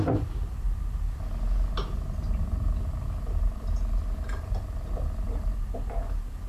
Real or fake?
real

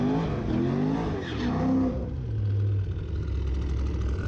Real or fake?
real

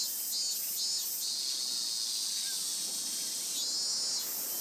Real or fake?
real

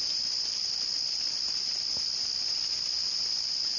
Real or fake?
real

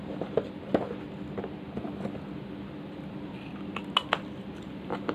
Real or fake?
real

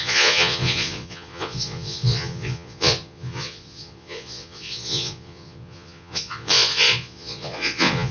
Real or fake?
fake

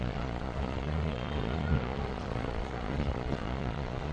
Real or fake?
fake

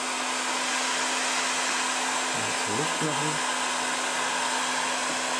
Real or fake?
real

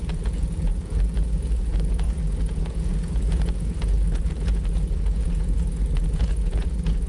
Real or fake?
fake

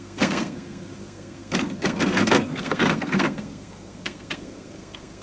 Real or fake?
fake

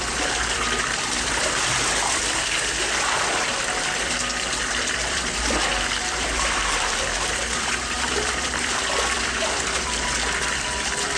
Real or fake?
fake